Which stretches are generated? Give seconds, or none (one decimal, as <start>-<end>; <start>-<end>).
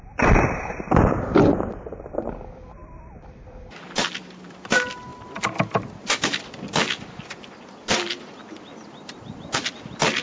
0.0-5.1; 5.9-10.2